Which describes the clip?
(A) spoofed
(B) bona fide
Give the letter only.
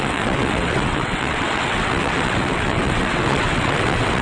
A